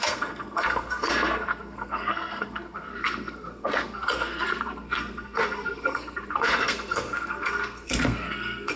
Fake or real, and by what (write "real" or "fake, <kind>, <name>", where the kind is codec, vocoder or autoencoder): fake, codec, SNAC